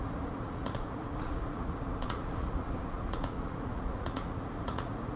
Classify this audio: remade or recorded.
remade